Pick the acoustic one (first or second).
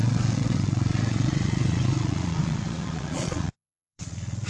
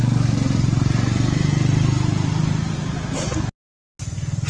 second